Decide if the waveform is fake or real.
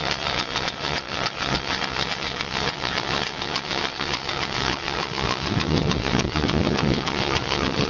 fake